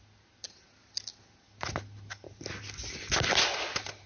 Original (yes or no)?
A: yes